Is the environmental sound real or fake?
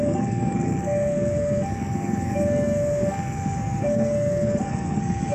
fake